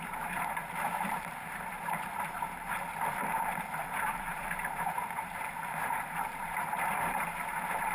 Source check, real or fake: fake